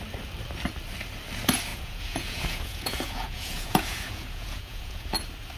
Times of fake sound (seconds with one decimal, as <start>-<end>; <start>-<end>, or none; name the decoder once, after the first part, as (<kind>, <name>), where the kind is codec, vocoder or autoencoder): 1.7-5.1 (vocoder, Vocos)